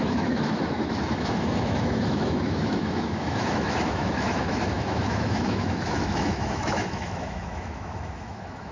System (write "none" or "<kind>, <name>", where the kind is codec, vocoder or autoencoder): autoencoder, DAC-VAE